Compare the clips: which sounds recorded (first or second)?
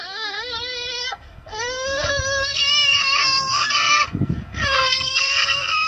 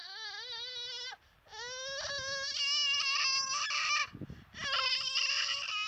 second